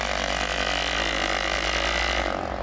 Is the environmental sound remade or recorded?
recorded